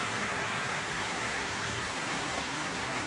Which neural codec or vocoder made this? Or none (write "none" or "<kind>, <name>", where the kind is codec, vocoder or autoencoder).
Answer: codec, SNAC